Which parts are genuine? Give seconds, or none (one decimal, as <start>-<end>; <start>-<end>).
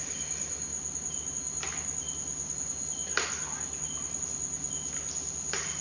0.0-5.8